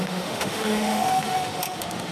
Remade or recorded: remade